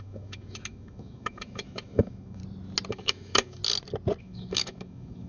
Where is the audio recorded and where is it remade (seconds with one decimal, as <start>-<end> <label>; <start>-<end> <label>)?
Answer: 0.0-2.4 remade; 2.4-2.9 recorded; 2.9-3.6 remade; 3.6-4.2 recorded; 4.2-5.3 remade